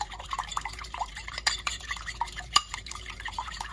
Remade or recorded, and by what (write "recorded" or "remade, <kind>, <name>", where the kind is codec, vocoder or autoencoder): remade, vocoder, BigVGAN v2